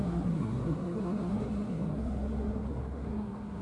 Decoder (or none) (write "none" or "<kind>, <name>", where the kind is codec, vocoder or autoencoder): codec, SNAC